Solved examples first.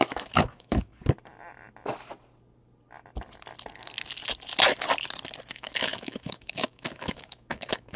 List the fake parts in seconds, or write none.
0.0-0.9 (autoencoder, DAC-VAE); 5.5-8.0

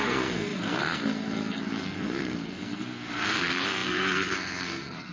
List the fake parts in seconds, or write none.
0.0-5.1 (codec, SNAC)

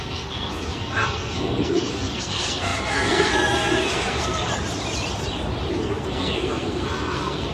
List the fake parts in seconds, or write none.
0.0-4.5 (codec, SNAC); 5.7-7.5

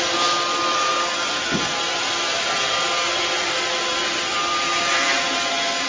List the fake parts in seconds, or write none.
none